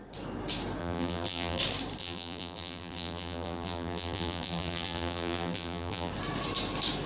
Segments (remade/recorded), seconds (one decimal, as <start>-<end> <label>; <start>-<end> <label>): 0.0-0.8 recorded; 0.8-1.6 remade; 1.6-2.0 recorded; 2.0-6.1 remade; 6.1-7.1 recorded